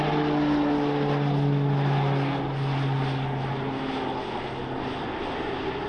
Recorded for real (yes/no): yes